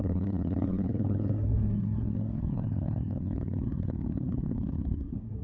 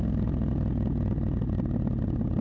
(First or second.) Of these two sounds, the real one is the second